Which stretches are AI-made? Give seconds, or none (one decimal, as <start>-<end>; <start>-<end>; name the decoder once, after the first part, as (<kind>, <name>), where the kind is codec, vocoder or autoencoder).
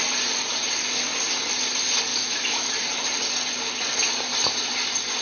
2.1-2.7 (autoencoder, DAC-VAE)